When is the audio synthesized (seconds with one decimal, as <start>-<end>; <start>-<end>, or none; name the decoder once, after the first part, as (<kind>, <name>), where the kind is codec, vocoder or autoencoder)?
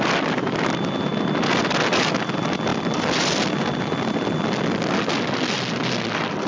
none